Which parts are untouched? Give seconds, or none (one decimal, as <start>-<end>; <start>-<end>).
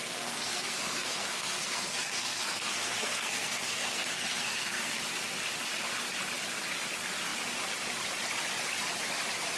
5.0-9.6